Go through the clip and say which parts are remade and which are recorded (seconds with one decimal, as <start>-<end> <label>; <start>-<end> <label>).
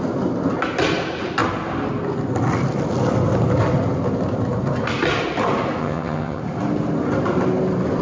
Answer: 0.0-5.8 recorded; 5.8-6.4 remade; 6.4-8.0 recorded